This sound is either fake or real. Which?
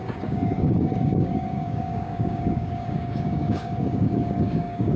fake